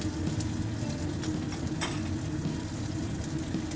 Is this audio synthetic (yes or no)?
no